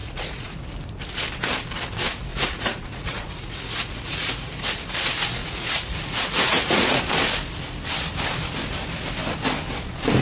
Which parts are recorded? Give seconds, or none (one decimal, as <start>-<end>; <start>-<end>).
0.6-2.3; 4.8-5.4; 7.0-10.2